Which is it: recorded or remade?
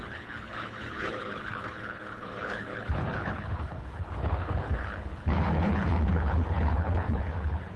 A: remade